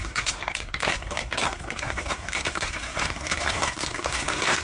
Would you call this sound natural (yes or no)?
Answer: no